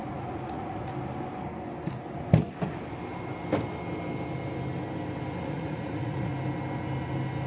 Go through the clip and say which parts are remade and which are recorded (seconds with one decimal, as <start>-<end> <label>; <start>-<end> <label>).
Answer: 0.0-0.9 remade; 0.9-5.4 recorded; 5.4-6.3 remade; 6.3-7.5 recorded